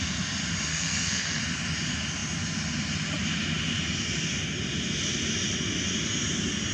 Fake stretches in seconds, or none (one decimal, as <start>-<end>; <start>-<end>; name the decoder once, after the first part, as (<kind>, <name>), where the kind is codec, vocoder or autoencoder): 0.7-1.4 (codec, SNAC)